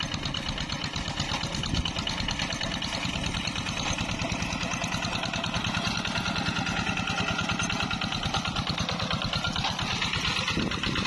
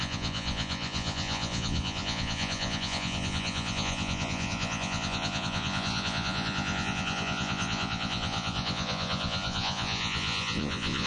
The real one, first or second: first